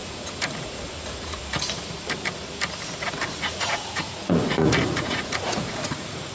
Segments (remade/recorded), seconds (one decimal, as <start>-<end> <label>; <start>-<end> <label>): 0.0-1.4 remade; 1.4-3.5 recorded; 3.5-6.3 remade